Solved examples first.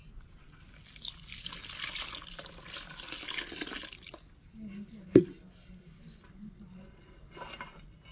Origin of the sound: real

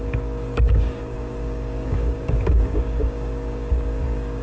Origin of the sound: fake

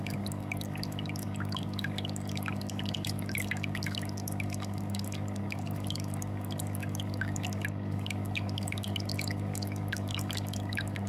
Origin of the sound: fake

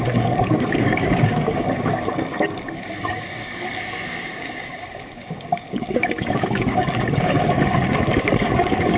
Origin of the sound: fake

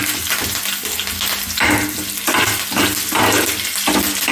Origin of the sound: real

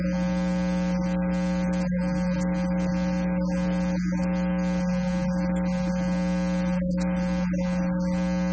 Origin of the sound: real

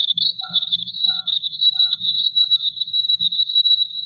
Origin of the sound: fake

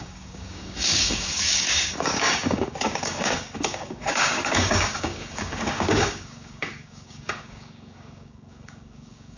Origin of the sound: fake